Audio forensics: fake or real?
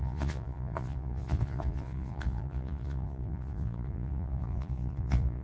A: fake